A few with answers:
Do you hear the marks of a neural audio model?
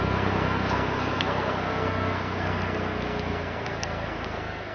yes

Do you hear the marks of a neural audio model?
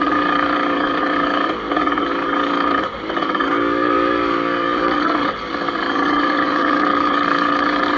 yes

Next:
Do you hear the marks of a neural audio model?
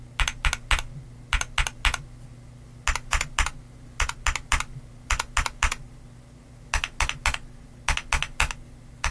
no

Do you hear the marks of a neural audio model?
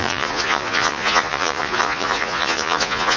yes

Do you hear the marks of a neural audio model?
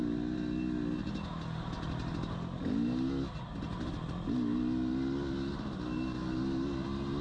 no